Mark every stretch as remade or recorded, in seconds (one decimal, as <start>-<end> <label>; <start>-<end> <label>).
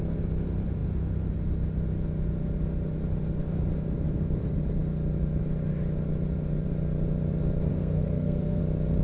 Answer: 0.0-7.7 recorded; 7.7-8.6 remade; 8.6-9.0 recorded